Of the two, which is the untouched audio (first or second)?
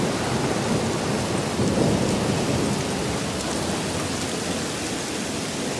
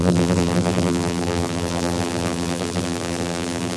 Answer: first